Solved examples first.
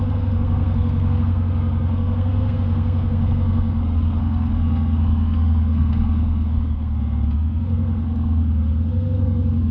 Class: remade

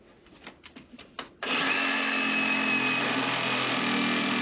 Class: recorded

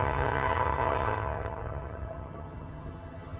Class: remade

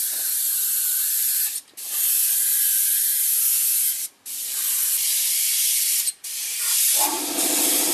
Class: recorded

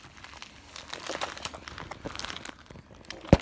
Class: recorded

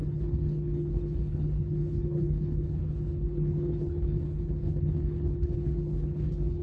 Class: remade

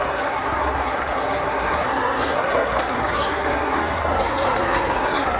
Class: remade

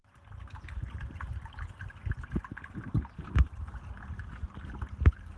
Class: recorded